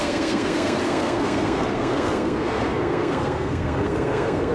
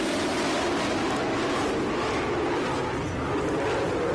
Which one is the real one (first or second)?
second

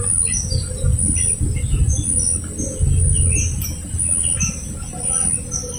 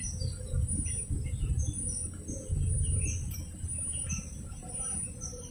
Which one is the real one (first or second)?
first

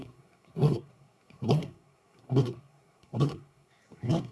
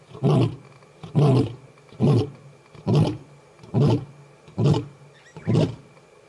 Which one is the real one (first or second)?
second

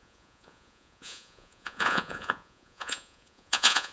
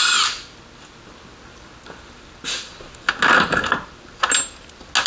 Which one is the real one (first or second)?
second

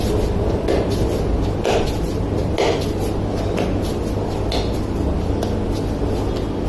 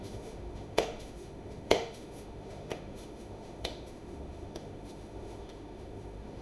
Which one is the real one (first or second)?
first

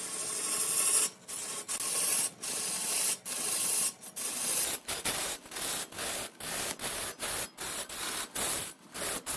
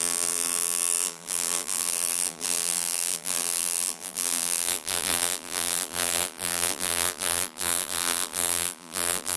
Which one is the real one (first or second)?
first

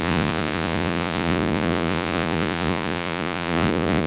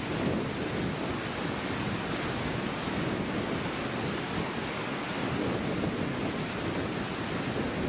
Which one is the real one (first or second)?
second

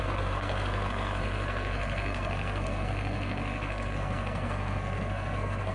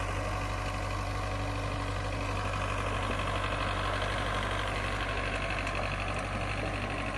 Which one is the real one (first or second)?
second